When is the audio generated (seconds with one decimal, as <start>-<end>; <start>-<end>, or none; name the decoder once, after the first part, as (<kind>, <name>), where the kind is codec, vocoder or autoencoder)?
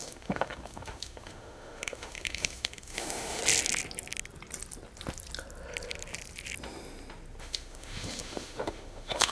0.0-3.4 (autoencoder, DAC-VAE); 7.4-9.3